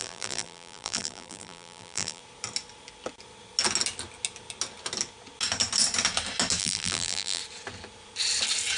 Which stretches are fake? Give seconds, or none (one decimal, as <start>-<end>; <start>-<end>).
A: 0.0-2.2; 6.6-7.4